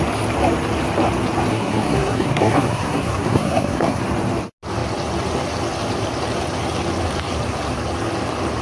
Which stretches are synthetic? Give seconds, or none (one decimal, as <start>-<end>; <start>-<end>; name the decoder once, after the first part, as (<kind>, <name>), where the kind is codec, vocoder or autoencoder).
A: 1.5-4.0 (codec, SNAC)